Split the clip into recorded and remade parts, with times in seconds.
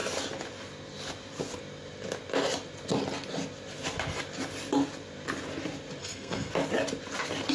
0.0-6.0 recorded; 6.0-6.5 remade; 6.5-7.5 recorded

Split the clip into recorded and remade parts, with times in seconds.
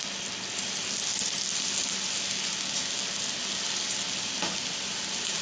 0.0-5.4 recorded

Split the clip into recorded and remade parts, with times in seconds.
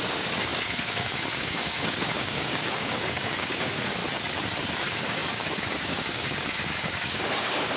0.0-4.0 remade; 4.0-4.8 recorded; 4.8-7.8 remade